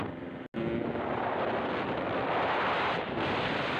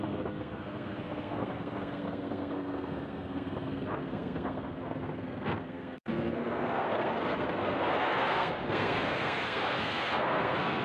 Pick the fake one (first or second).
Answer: second